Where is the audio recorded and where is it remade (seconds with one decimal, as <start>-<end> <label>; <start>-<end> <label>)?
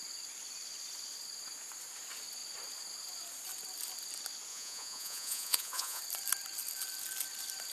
0.0-4.5 recorded; 4.5-6.0 remade; 6.0-7.7 recorded